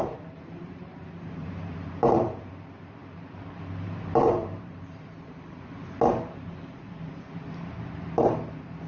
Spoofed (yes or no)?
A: yes